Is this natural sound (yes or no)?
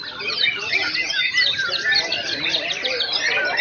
yes